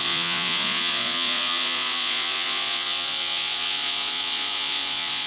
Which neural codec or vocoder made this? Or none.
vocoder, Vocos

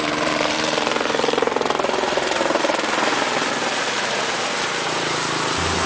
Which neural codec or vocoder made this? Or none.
vocoder, BigVGAN v2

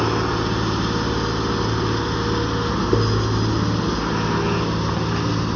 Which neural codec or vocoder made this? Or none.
none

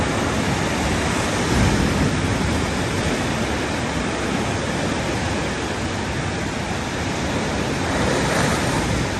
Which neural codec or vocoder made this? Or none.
none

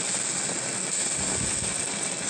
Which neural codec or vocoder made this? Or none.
none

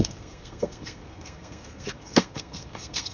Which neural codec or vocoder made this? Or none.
codec, SNAC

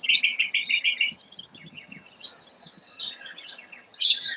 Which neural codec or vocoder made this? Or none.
vocoder, HiFi-GAN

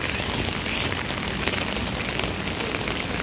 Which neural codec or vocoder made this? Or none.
none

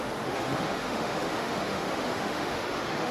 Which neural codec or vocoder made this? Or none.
autoencoder, DAC-VAE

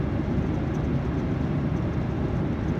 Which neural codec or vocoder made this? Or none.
none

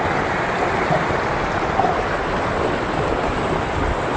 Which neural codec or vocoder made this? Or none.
none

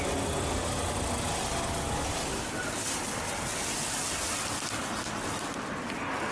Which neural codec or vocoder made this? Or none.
none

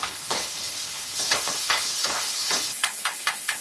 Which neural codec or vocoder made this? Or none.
codec, HILCodec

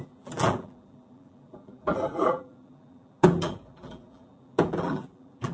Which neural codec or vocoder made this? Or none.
vocoder, BigVGAN v2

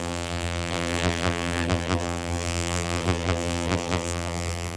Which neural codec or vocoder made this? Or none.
vocoder, BigVGAN v2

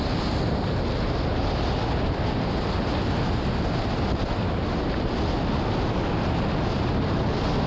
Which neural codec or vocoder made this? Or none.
none